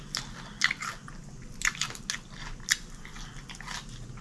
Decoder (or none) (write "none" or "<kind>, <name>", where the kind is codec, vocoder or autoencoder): none